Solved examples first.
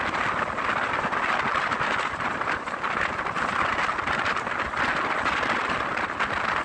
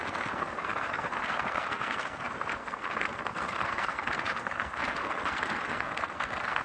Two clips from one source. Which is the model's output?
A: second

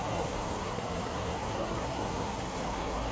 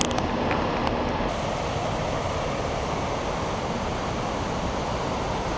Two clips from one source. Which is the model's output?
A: first